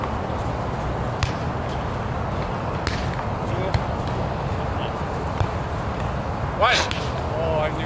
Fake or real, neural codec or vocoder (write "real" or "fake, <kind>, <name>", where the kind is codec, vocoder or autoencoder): real